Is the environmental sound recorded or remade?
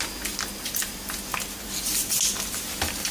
recorded